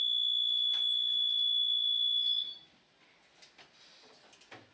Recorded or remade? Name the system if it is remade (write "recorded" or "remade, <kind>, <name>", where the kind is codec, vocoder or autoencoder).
recorded